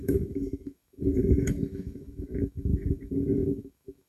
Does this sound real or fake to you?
fake